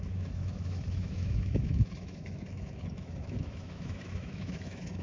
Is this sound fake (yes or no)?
yes